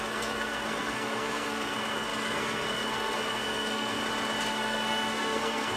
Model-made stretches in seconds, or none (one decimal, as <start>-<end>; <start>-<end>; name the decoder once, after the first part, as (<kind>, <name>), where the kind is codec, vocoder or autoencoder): 0.0-4.0 (codec, SNAC); 4.5-5.8